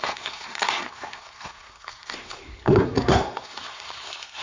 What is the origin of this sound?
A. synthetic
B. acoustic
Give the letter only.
A